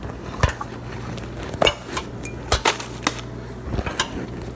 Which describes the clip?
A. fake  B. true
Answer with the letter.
B